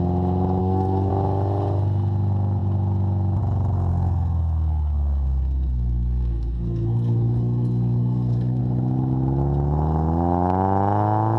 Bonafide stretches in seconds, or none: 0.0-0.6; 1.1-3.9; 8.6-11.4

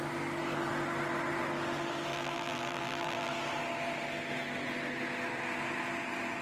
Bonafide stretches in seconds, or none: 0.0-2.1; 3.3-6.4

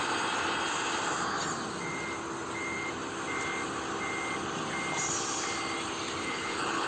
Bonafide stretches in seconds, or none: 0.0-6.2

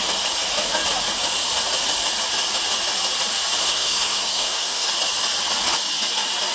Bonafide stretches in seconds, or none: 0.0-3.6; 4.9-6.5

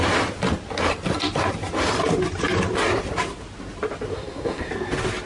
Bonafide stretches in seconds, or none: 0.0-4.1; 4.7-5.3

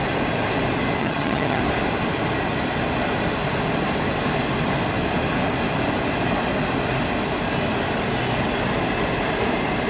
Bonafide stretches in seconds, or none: 0.0-1.0; 1.6-9.9